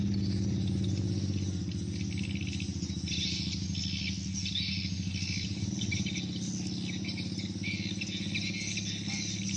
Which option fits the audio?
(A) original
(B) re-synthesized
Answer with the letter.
A